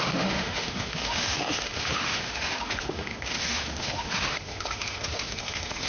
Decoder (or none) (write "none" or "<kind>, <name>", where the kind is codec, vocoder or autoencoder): autoencoder, DAC-VAE